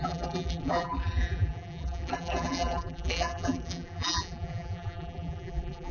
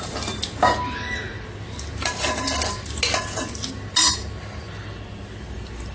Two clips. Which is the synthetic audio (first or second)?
first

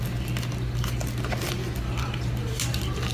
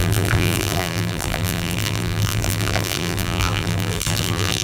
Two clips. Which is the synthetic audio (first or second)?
second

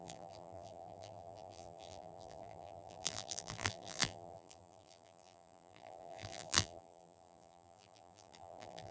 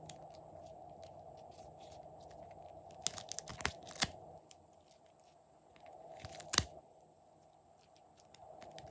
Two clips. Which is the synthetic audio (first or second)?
first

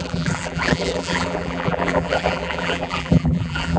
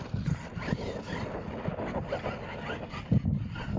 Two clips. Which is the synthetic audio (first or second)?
first